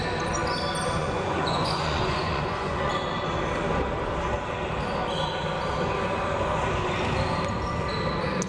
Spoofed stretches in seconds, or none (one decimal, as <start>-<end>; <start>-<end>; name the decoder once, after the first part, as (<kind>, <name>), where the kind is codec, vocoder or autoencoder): 1.0-2.9 (vocoder, Vocos)